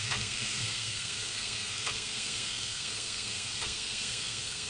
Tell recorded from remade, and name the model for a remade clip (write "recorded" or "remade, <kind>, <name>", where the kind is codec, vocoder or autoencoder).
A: remade, codec, SNAC